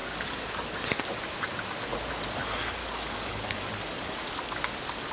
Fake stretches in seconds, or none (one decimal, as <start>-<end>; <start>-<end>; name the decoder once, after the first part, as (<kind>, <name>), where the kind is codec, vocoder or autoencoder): 0.0-1.0 (codec, DAC); 2.8-5.1

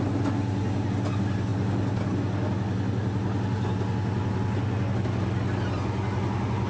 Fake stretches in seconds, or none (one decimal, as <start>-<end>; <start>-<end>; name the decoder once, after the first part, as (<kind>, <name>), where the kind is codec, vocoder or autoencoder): none

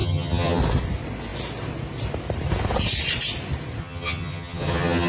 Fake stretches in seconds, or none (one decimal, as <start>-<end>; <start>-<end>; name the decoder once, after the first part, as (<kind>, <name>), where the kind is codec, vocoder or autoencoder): 0.0-0.6 (vocoder, HiFi-GAN); 3.8-5.1

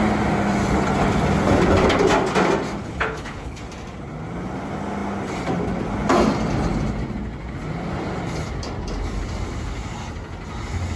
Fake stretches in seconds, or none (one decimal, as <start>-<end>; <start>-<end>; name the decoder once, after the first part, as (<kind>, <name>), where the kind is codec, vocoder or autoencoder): 2.8-3.6 (codec, HILCodec)

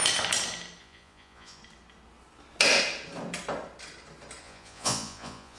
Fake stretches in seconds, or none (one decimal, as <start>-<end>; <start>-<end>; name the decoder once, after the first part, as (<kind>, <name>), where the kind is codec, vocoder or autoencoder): 0.8-1.6 (vocoder, Vocos); 4.4-5.6

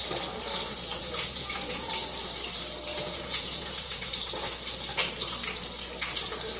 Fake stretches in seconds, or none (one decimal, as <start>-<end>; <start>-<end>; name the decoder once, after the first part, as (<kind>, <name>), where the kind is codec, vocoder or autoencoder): 1.0-1.9 (vocoder, Vocos); 2.9-4.1